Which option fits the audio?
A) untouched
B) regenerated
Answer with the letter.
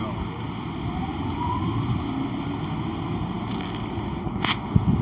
A